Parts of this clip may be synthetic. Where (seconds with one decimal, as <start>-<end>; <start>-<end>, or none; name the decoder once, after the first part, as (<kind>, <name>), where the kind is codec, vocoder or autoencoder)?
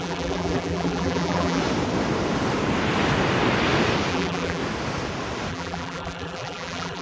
0.0-1.6 (vocoder, BigVGAN v2); 4.1-4.6; 5.5-7.0